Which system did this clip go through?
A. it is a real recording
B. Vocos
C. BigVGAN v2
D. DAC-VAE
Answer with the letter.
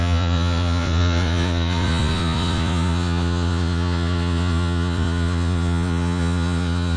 B